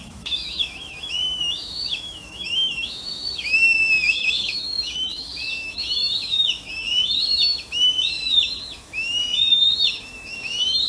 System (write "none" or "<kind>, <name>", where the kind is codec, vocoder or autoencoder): autoencoder, DAC-VAE